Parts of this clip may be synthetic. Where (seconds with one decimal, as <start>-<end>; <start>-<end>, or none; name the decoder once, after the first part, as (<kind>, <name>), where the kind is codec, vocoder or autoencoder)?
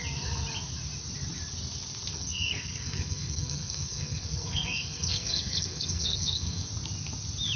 2.1-6.7 (codec, SNAC)